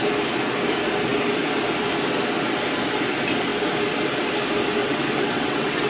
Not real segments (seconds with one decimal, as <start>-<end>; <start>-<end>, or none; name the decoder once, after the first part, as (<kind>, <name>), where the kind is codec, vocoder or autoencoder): 4.8-5.9 (vocoder, WaveNeXt)